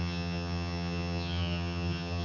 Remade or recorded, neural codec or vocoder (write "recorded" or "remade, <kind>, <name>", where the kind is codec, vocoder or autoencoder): remade, vocoder, HiFi-GAN